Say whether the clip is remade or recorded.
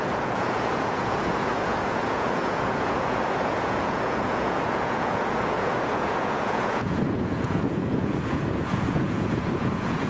remade